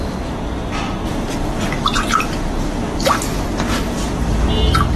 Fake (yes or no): no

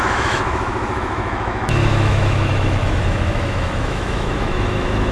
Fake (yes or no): yes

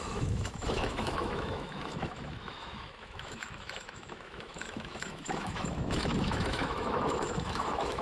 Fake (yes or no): yes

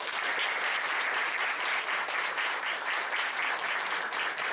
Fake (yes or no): no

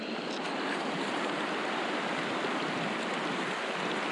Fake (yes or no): no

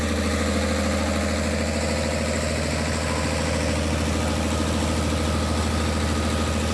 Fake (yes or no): no